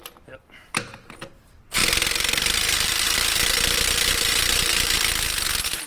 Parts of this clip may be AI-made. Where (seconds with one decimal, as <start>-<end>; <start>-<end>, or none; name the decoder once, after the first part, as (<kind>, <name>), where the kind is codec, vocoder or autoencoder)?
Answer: none